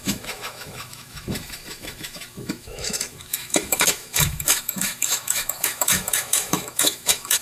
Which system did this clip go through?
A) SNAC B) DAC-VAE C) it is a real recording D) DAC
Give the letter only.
B